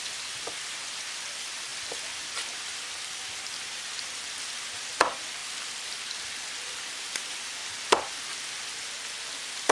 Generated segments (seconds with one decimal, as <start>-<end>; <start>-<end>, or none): 0.0-7.6